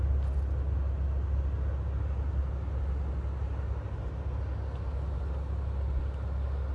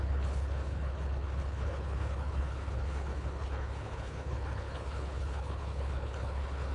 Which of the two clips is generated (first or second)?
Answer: second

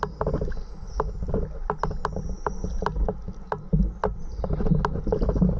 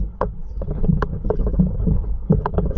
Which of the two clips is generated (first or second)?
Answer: second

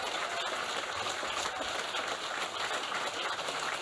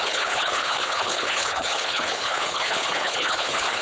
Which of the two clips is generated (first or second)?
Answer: second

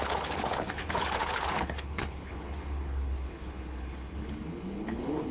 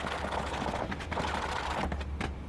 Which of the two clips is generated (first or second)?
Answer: first